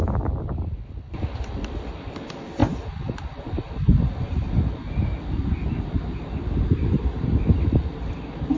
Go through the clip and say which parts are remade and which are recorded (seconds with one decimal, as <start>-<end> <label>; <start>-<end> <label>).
0.0-8.6 recorded

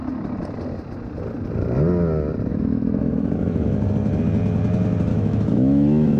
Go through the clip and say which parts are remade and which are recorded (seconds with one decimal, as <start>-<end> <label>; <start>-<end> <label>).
0.0-2.5 recorded; 2.5-3.9 remade; 3.9-5.1 recorded; 5.1-6.2 remade

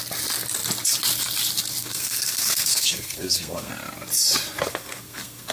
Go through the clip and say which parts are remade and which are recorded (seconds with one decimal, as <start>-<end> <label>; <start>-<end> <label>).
0.0-1.8 recorded; 1.8-3.7 remade; 3.7-4.7 recorded; 4.7-5.5 remade